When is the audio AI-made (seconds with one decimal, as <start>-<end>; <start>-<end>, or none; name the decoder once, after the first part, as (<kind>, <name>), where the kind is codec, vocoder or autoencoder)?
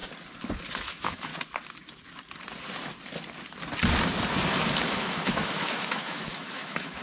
0.9-1.3 (autoencoder, DAC-VAE); 4.9-7.0